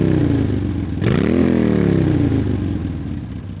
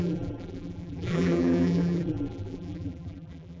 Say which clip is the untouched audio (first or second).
first